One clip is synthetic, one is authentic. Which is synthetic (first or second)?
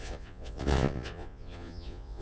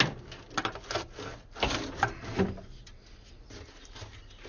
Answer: first